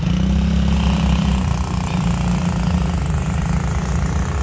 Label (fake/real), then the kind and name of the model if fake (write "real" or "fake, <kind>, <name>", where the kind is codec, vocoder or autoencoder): real